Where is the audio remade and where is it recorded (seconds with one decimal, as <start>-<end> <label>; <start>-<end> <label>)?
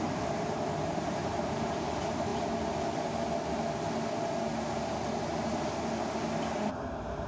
0.0-2.3 remade; 2.3-6.7 recorded; 6.7-7.3 remade